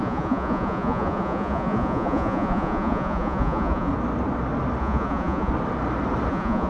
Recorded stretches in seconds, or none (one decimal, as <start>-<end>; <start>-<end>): 3.9-4.8; 5.5-6.3